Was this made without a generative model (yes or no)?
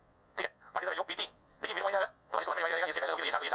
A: no